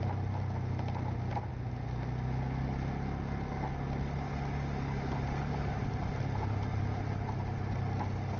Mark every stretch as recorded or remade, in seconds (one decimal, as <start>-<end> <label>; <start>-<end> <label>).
0.0-8.4 recorded